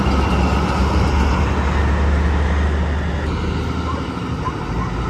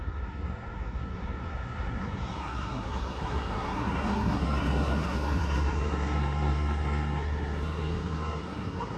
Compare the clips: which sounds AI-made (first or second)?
second